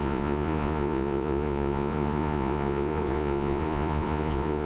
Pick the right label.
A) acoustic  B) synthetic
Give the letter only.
B